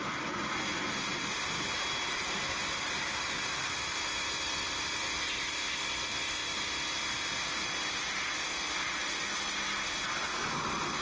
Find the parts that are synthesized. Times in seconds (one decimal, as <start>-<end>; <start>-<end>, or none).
none